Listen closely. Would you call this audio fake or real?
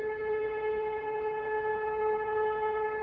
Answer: fake